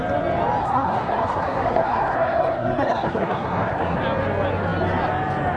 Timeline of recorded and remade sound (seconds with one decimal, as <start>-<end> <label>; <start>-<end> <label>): 0.0-0.6 recorded; 0.6-4.0 remade; 4.0-5.6 recorded